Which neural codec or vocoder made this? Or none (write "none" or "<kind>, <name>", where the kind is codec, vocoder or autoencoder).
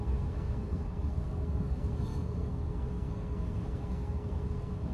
codec, SNAC